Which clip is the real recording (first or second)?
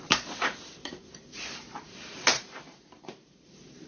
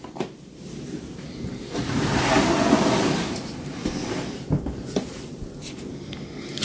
second